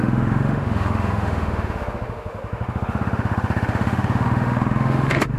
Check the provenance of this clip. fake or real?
fake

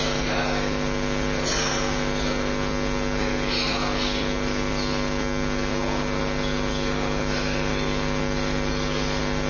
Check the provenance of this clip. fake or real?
real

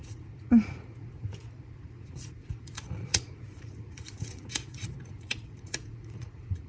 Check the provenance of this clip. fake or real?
fake